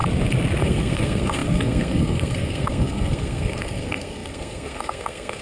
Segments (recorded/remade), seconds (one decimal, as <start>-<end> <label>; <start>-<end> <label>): 0.0-0.6 recorded; 0.6-5.4 remade